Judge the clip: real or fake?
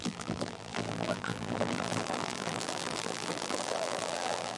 fake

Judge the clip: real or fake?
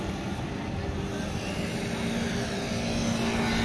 real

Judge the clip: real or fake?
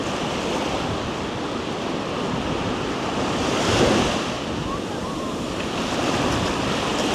real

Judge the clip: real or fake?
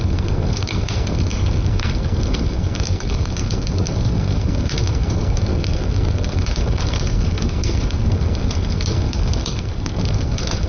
fake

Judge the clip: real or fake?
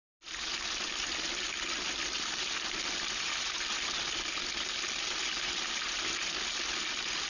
real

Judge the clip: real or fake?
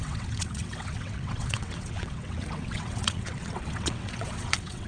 fake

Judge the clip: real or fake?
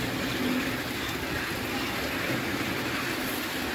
real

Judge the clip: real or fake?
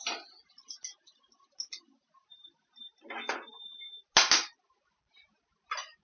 real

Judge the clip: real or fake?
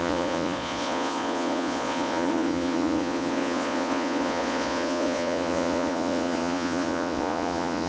fake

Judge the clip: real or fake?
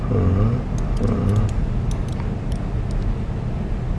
real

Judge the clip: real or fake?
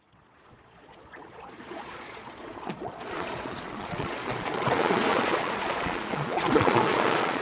fake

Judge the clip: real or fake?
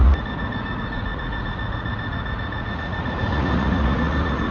fake